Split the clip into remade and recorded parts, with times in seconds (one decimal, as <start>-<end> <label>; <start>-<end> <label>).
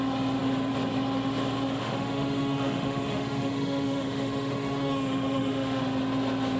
0.0-1.8 recorded; 1.8-5.8 remade; 5.8-6.6 recorded